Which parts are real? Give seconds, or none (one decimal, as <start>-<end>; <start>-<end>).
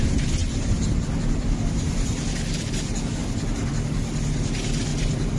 0.0-5.4